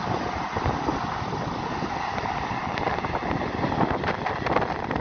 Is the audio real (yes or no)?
yes